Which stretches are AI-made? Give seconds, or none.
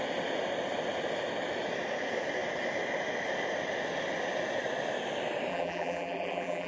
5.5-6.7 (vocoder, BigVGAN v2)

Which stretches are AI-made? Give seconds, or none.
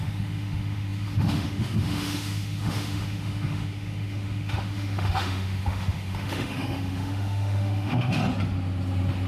0.0-8.2 (autoencoder, DAC-VAE)